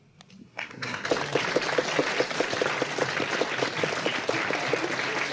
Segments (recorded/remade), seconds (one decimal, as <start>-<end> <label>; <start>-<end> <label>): 0.0-0.4 recorded; 0.4-1.1 remade; 1.1-5.3 recorded